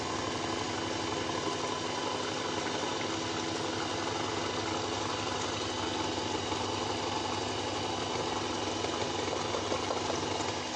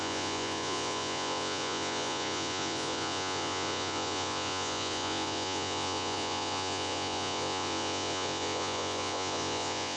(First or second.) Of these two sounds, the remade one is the second